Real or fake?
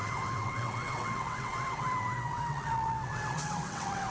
fake